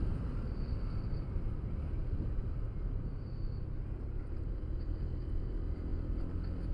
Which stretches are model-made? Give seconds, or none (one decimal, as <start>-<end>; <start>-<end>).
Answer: none